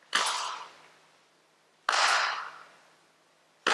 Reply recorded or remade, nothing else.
recorded